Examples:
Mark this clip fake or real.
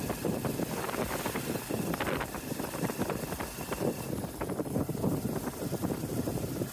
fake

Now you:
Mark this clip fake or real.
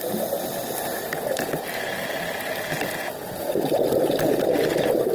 real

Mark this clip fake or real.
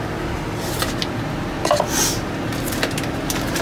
real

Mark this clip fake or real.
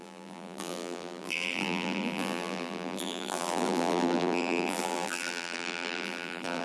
fake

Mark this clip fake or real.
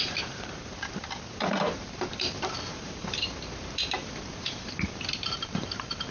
fake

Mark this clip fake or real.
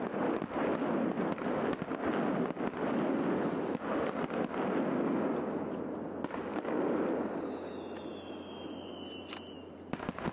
real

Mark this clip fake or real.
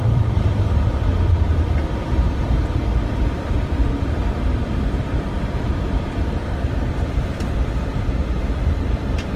fake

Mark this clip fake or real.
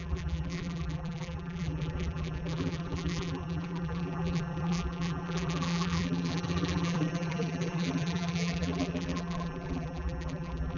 fake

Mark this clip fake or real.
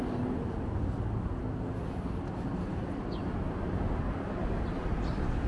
real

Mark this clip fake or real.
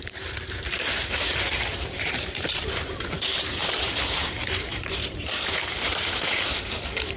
fake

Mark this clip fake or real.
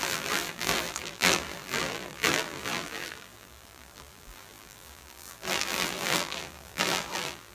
fake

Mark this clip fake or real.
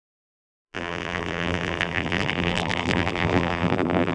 fake